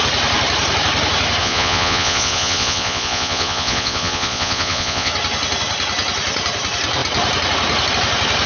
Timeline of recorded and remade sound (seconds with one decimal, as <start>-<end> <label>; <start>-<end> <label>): 0.0-1.4 recorded; 1.4-5.1 remade; 5.1-8.5 recorded